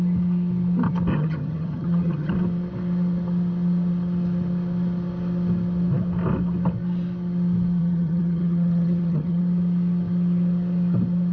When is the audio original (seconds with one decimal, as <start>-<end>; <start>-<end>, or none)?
0.0-1.1; 2.3-7.8; 9.4-11.3